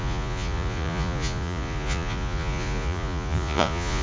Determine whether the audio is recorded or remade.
remade